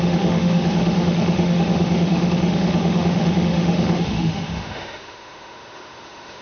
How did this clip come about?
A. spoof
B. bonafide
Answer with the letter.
A